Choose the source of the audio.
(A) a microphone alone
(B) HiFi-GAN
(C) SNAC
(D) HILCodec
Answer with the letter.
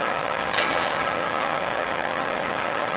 B